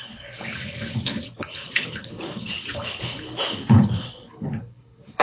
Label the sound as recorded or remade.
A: remade